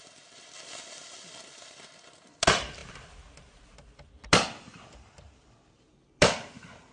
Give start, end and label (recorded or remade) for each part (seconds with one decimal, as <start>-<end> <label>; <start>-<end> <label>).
0.0-6.9 recorded

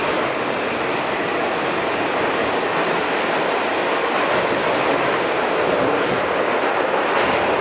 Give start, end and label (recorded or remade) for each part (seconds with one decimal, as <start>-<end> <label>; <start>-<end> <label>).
0.0-7.6 recorded

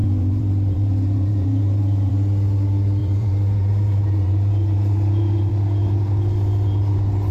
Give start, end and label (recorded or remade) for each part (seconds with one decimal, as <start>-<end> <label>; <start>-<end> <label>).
0.0-2.1 remade; 2.1-3.0 recorded; 3.0-5.5 remade; 5.5-7.3 recorded

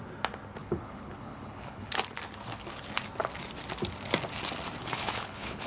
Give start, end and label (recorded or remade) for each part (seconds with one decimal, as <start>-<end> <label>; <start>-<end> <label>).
0.0-0.6 recorded; 0.6-1.9 remade; 1.9-4.8 recorded; 4.8-5.7 remade